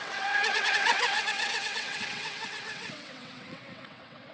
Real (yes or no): no